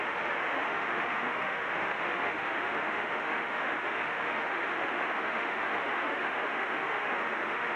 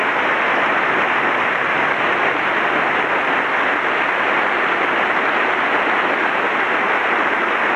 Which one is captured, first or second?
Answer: second